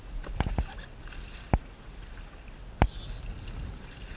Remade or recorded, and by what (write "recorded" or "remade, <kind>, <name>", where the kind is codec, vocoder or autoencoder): recorded